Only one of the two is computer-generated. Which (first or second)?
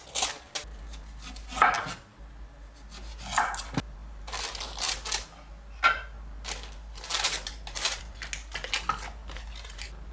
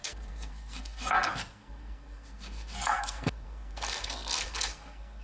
second